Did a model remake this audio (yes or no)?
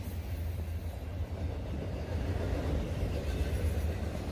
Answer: no